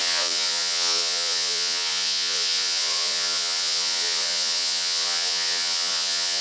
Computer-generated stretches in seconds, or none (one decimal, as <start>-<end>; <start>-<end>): 0.0-6.4